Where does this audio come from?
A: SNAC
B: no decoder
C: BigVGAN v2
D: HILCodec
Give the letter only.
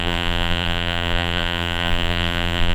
C